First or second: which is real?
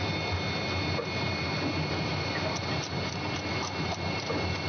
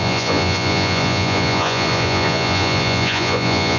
first